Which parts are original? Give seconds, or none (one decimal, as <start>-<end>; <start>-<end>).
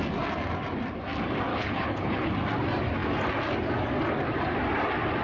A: 0.0-1.5; 2.3-5.2